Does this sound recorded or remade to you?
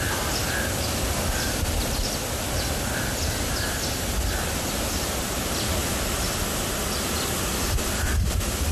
recorded